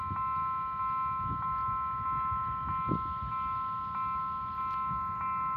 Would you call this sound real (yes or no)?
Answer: yes